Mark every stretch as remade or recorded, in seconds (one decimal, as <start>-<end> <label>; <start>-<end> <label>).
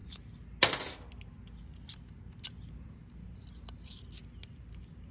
0.0-5.1 recorded